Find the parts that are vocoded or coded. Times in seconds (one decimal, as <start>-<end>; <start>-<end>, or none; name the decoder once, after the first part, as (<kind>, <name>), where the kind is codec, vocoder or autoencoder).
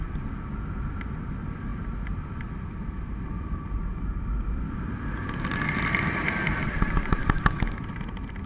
7.2-7.8 (codec, DAC)